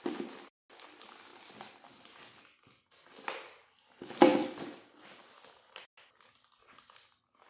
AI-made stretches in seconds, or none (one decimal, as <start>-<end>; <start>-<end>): none